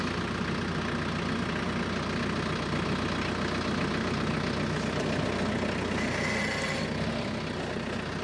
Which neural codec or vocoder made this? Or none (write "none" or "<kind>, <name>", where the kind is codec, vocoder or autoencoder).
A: none